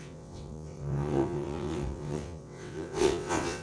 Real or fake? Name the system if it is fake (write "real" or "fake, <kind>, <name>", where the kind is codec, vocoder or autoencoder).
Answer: fake, vocoder, WaveNeXt